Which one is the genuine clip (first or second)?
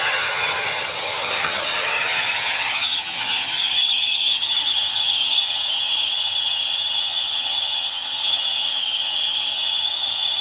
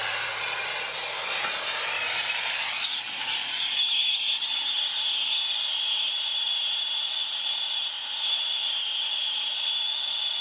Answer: second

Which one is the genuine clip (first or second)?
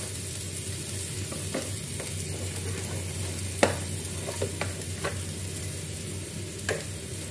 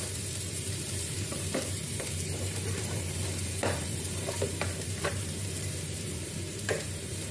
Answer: first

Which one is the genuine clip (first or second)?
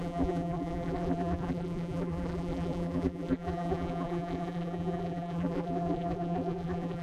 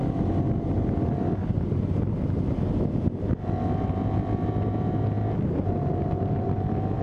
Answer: second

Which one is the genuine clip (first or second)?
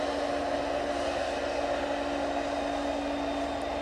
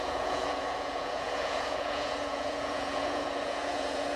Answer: first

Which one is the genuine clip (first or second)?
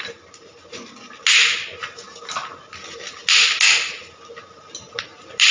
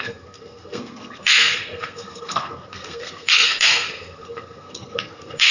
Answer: first